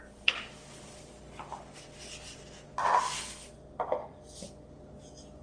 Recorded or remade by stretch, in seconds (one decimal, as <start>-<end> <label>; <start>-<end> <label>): 0.0-5.4 recorded